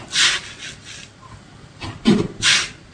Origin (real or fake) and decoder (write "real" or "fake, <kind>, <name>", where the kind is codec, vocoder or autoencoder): real